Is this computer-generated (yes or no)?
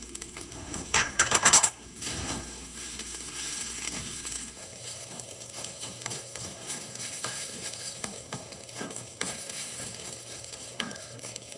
yes